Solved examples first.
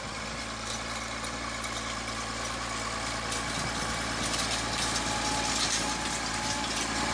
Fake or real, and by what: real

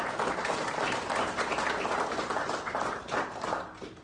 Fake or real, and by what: real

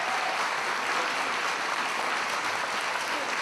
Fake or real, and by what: real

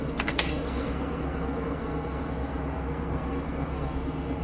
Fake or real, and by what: fake, codec, SNAC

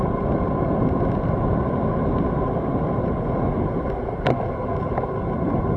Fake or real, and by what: real